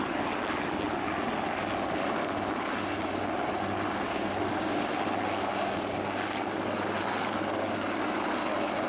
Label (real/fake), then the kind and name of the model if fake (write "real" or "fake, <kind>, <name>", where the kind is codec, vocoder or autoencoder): real